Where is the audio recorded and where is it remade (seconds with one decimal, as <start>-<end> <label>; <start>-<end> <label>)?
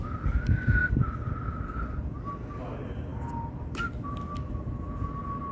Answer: 0.0-5.5 recorded